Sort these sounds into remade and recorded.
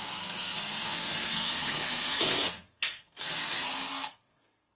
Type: remade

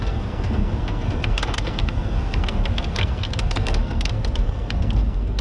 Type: remade